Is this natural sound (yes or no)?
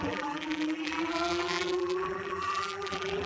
no